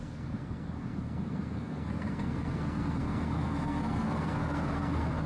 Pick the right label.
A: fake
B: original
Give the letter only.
A